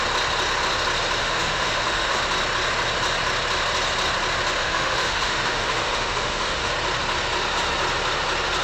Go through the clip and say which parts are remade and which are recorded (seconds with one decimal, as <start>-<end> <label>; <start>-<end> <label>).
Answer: 0.0-1.2 recorded; 1.2-2.2 remade; 2.2-4.6 recorded; 4.6-6.7 remade; 6.7-8.6 recorded